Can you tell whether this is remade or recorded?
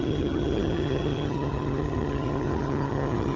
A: remade